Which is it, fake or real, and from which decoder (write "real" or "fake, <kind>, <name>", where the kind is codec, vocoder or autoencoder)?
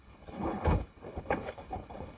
fake, codec, HILCodec